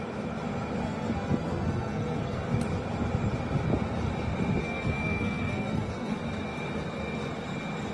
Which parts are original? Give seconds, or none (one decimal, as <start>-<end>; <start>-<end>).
0.0-0.8; 2.5-4.6; 6.1-7.9